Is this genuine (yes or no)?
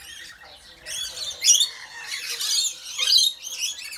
no